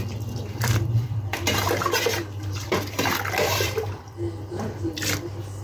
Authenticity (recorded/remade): remade